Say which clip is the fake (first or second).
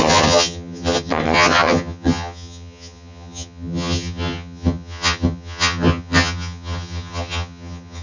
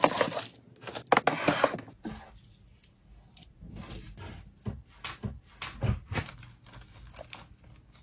first